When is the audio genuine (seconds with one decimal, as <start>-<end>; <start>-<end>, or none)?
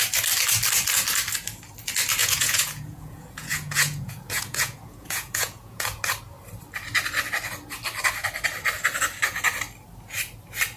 0.0-2.2; 6.0-10.8